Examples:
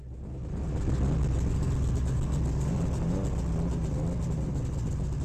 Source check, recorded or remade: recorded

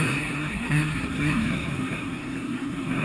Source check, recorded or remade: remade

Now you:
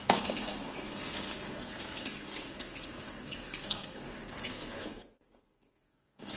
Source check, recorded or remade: remade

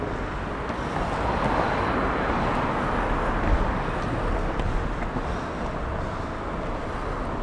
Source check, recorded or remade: recorded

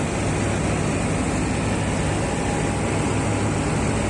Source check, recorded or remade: recorded